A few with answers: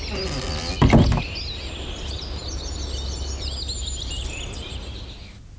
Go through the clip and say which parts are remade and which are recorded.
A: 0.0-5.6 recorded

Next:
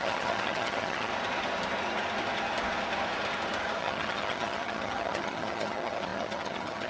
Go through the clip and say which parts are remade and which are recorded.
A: 0.0-1.1 remade; 1.1-3.8 recorded; 3.8-6.9 remade